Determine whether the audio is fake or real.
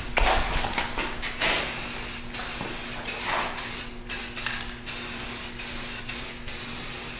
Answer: real